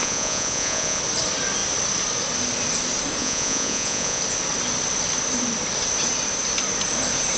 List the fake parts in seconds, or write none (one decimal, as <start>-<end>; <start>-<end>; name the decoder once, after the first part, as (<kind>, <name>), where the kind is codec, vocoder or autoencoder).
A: 0.0-1.0 (vocoder, Vocos); 3.2-4.2